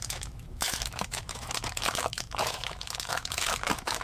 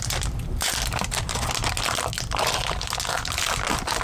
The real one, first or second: second